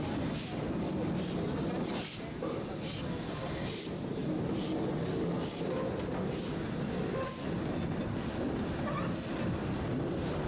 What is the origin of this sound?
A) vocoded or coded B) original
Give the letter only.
B